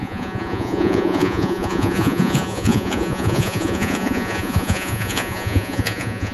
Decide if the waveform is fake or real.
fake